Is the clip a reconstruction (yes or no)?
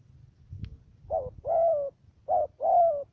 no